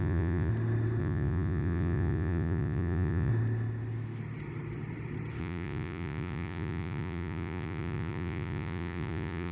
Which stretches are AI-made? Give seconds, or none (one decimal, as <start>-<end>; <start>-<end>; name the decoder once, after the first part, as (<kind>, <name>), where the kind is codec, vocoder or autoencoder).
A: 0.0-0.5 (vocoder, Vocos); 1.0-3.3; 5.4-9.5